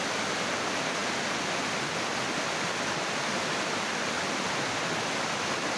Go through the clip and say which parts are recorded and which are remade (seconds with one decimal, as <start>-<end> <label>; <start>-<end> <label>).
0.0-5.8 recorded